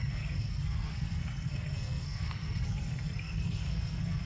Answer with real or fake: fake